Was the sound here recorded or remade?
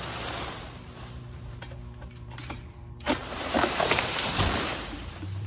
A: remade